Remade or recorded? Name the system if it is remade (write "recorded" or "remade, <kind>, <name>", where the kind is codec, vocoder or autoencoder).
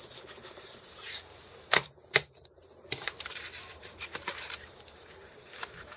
remade, vocoder, BigVGAN v2